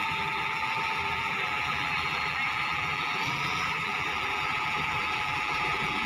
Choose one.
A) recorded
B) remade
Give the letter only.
B